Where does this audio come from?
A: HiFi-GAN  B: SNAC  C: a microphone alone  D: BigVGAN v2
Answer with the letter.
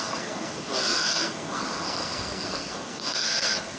B